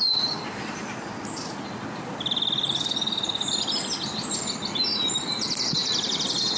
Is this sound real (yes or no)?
yes